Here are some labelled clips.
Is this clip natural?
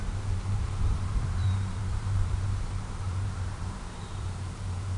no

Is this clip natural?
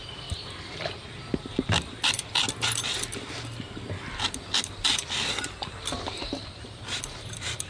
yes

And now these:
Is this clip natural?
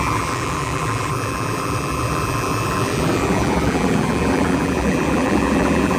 no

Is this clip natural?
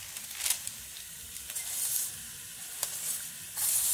yes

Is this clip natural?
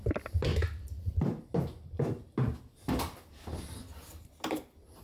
yes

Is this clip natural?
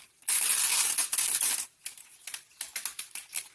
yes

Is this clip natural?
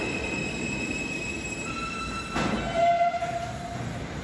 no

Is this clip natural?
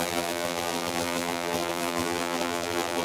no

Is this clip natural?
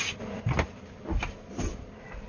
yes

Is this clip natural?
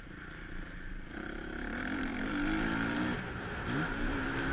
no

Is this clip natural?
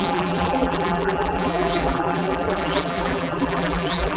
no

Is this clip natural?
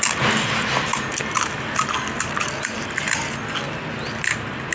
yes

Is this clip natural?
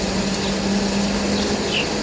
yes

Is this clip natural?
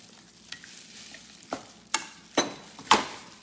yes